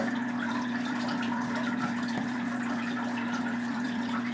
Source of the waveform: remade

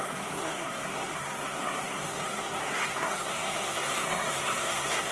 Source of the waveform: remade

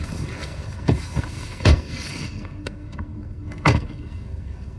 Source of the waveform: remade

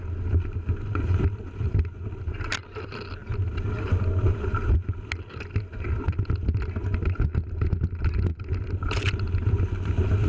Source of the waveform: recorded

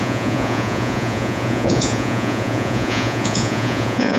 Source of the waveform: remade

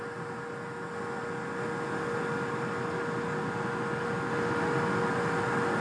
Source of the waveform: recorded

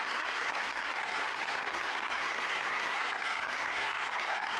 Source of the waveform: remade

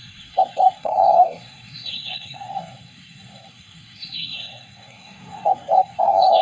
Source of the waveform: remade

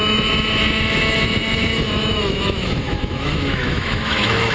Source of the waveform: remade